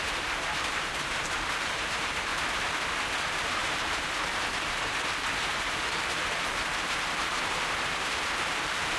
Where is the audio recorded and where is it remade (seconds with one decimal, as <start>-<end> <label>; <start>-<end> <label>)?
0.0-2.3 remade; 2.3-3.2 recorded; 3.2-9.0 remade